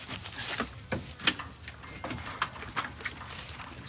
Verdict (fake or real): real